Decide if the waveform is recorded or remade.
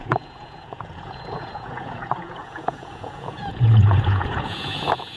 remade